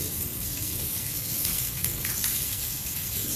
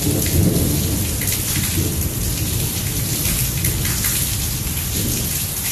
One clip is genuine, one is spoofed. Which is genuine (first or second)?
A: second